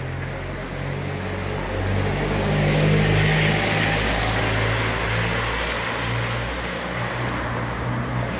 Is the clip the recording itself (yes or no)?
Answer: yes